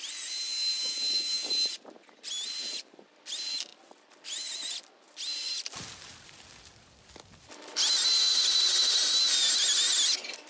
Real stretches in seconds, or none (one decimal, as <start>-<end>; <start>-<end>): 0.0-10.5